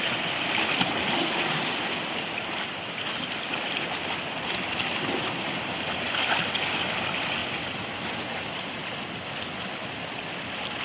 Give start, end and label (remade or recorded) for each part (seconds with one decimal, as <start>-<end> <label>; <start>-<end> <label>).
0.0-10.8 recorded